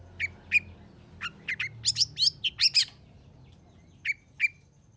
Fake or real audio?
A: real